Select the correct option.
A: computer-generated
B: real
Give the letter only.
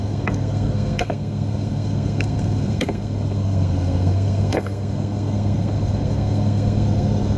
A